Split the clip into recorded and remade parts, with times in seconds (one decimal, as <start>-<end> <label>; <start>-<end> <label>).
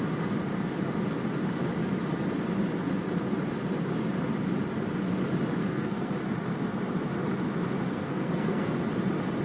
0.0-5.6 recorded; 5.6-6.1 remade; 6.1-7.9 recorded; 7.9-8.7 remade; 8.7-9.4 recorded